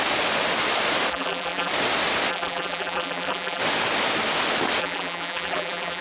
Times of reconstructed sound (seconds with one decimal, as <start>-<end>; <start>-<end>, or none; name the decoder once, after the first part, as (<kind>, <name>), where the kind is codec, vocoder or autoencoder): 1.1-1.7 (vocoder, BigVGAN v2); 2.3-3.6; 4.8-6.0